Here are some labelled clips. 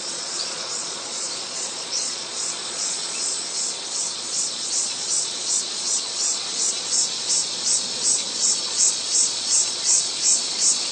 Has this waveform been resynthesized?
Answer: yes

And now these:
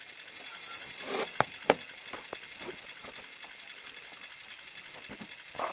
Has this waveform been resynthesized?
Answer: no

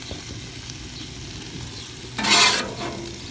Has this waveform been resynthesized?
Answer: no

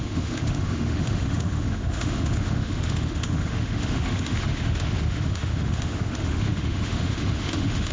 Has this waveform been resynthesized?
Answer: yes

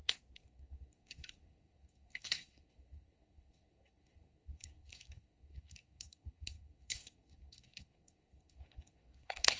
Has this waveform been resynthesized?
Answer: yes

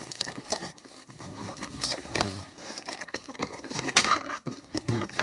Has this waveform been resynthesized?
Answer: yes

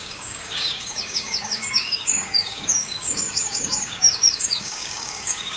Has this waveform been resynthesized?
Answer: yes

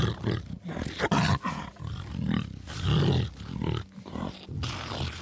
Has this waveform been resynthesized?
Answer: no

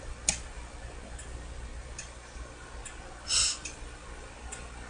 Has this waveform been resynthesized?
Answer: no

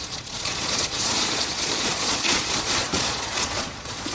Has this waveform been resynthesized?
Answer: yes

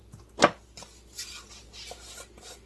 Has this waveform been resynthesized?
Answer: no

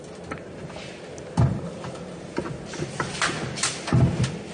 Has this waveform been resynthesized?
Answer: no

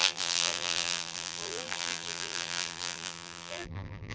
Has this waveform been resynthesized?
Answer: yes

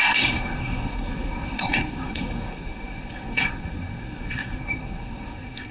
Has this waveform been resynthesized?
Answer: yes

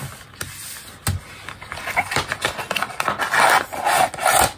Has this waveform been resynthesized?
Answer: no